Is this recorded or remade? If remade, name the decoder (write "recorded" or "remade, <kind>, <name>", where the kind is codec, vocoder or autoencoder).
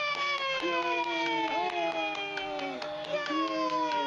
recorded